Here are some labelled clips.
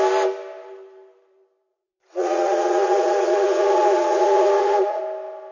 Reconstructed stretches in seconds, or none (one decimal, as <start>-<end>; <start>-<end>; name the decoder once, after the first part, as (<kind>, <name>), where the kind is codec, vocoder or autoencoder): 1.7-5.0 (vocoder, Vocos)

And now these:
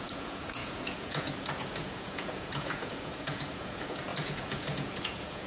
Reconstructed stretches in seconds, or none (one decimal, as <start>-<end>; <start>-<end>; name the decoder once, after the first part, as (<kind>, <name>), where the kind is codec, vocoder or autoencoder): 0.0-5.5 (vocoder, Vocos)

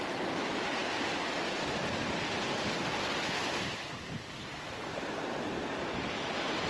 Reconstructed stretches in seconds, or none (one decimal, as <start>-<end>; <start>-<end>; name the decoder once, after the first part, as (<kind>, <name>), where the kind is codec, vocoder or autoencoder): none

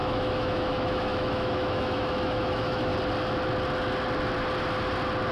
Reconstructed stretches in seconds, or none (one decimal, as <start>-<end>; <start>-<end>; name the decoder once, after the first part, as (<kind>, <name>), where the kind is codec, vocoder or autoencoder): 0.0-2.9 (autoencoder, DAC-VAE)